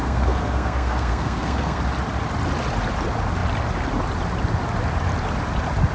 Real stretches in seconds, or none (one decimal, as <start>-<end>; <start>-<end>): 1.8-5.9